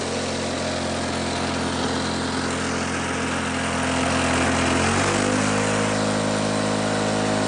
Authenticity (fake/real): real